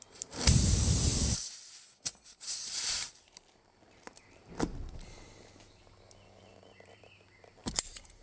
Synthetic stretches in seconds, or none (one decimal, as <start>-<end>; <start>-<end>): 0.0-1.1; 2.9-4.7; 6.2-8.2